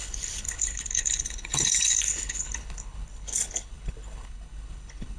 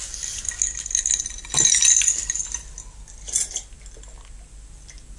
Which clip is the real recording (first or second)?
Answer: second